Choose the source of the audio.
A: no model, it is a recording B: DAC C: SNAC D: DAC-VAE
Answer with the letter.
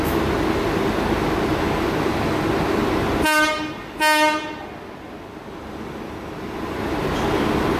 A